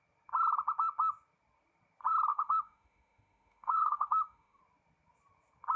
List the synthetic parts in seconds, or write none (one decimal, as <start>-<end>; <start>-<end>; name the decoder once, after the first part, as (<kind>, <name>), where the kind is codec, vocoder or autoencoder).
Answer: 2.3-4.6 (autoencoder, DAC-VAE)